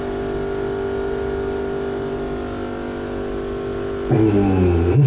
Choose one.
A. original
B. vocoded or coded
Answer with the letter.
A